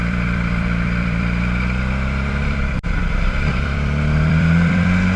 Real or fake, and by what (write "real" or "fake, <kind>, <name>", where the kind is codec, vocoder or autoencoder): fake, vocoder, BigVGAN v2